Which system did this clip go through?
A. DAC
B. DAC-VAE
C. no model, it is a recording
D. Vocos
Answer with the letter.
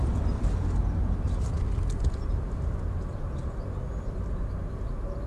C